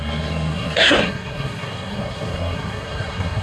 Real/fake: fake